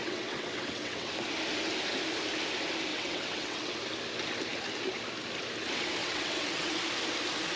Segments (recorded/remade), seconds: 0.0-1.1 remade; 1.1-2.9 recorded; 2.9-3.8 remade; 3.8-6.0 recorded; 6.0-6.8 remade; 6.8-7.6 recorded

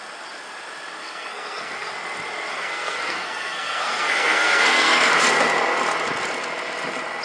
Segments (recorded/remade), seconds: 0.0-1.0 recorded; 1.0-1.9 remade; 1.9-2.5 recorded; 2.5-5.1 remade; 5.1-7.2 recorded

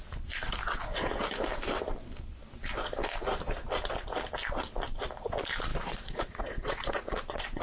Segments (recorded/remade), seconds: 0.0-5.7 recorded; 5.7-7.6 remade

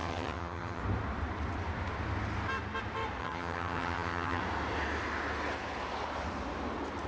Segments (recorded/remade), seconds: 0.0-0.8 remade; 0.8-3.2 recorded; 3.2-4.4 remade; 4.4-7.1 recorded

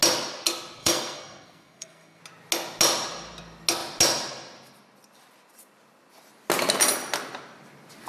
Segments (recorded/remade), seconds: 0.0-0.8 recorded; 0.8-2.2 remade; 2.2-8.1 recorded

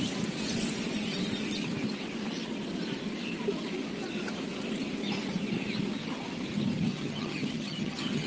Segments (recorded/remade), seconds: 0.0-6.9 recorded; 6.9-8.3 remade

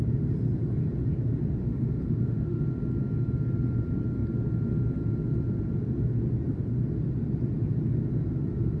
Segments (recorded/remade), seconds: 0.0-1.6 recorded; 1.6-2.6 remade; 2.6-8.8 recorded

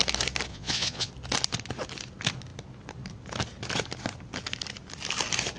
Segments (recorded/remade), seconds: 0.0-0.5 recorded; 0.5-1.1 remade; 1.1-5.6 recorded